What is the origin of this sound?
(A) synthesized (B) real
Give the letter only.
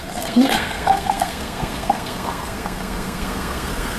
A